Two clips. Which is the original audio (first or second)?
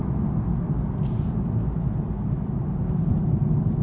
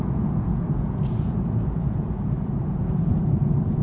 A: first